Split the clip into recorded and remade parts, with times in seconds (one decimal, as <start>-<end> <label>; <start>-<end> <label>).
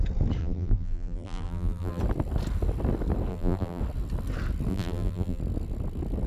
0.0-0.4 recorded; 0.4-2.0 remade; 2.0-3.3 recorded; 3.3-3.8 remade; 3.8-4.7 recorded; 4.7-5.4 remade; 5.4-6.3 recorded